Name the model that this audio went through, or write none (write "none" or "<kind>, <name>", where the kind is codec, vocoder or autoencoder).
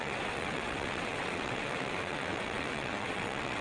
vocoder, WaveNeXt